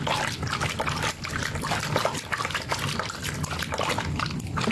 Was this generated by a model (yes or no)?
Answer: no